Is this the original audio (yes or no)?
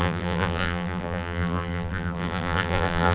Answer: no